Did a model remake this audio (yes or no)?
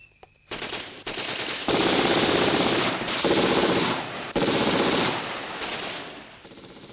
no